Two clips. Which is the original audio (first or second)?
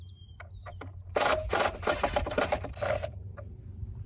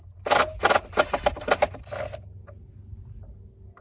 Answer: second